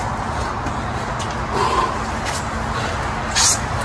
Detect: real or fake real